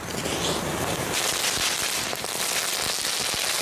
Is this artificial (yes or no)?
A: no